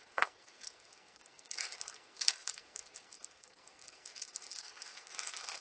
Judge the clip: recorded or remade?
remade